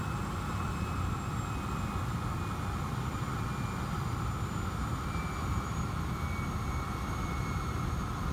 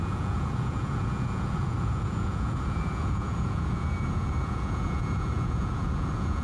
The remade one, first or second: second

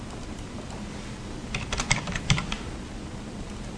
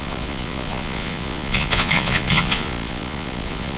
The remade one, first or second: second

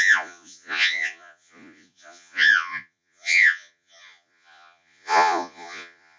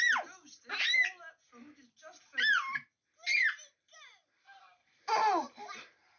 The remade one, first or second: first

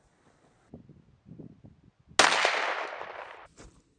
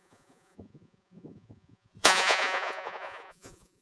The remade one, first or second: second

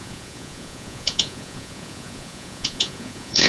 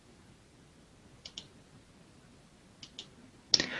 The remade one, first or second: first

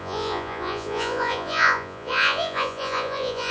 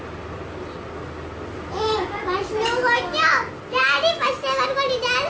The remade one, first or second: first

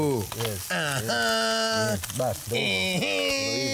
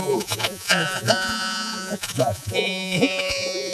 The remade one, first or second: second